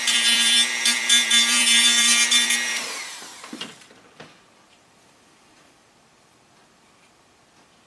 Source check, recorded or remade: remade